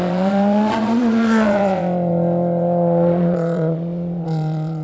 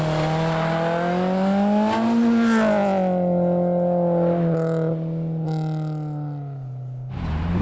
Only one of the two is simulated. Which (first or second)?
first